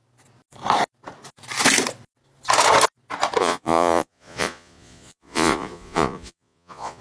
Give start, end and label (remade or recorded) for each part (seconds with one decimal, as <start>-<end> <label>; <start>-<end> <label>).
0.0-3.4 recorded; 3.4-7.0 remade